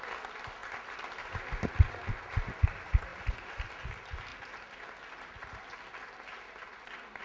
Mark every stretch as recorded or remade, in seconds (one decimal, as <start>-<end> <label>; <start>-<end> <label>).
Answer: 0.0-7.2 recorded